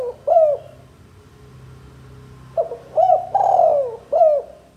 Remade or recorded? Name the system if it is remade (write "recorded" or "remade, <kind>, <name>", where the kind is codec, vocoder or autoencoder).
recorded